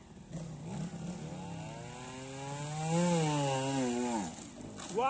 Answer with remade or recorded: recorded